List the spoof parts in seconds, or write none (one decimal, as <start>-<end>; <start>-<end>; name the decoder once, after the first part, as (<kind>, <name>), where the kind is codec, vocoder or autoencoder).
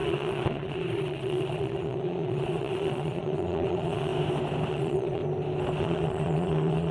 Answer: 0.0-4.1 (vocoder, Vocos); 4.7-5.2; 5.8-6.9